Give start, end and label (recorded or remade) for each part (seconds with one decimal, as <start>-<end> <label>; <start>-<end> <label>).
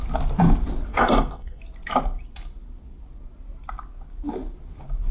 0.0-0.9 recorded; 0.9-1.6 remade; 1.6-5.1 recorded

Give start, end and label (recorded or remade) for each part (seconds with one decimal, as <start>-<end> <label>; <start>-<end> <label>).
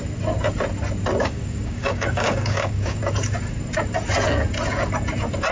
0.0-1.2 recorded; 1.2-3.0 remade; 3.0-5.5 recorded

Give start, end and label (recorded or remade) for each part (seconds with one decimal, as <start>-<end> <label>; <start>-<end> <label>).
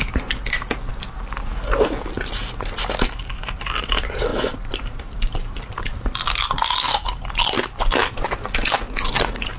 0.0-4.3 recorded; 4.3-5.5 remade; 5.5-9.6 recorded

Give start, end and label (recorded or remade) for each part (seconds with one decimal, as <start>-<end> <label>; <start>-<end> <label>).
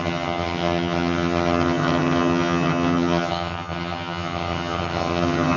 0.0-5.6 remade